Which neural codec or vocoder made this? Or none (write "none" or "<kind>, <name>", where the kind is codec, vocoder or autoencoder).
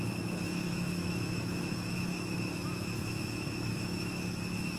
autoencoder, DAC-VAE